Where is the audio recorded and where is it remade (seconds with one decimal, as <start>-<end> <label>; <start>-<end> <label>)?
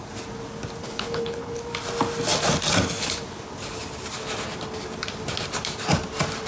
0.0-0.8 recorded; 0.8-1.6 remade; 1.6-6.5 recorded